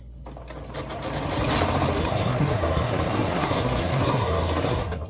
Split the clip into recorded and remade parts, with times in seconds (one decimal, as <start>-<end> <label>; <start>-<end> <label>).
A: 0.0-2.0 recorded; 2.0-5.1 remade